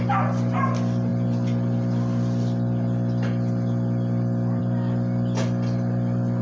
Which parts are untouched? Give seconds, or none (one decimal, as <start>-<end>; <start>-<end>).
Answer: 0.0-6.4